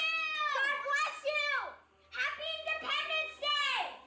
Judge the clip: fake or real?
real